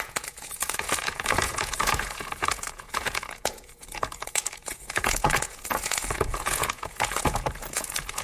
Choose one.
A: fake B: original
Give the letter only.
A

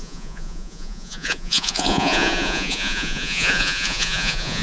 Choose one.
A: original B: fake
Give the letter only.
B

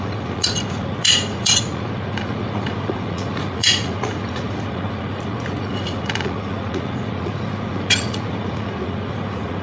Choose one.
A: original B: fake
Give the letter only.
B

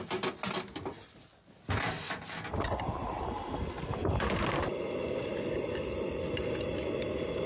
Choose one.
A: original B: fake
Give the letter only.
A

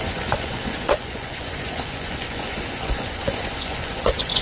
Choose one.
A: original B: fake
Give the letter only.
B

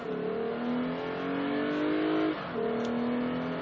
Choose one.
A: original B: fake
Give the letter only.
A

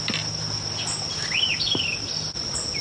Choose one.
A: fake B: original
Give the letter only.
B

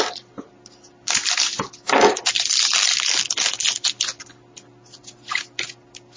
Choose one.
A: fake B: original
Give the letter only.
B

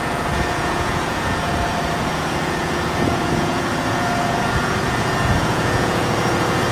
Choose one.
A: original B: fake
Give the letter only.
B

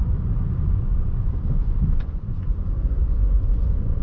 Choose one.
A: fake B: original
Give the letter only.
A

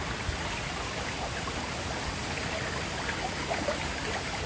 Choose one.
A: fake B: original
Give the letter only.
B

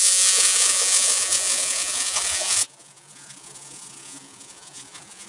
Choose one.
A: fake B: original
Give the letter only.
A